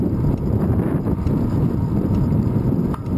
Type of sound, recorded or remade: recorded